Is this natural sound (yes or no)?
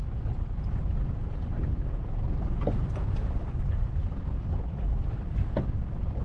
yes